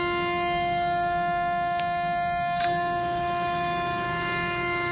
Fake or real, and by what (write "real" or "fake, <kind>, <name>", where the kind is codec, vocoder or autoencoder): real